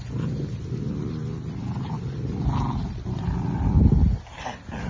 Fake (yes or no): no